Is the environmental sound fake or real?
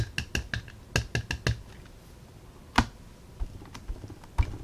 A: real